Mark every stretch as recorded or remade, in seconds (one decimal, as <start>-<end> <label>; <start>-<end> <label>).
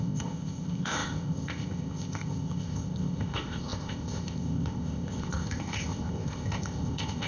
0.0-7.3 remade